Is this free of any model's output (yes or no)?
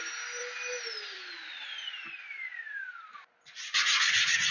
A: yes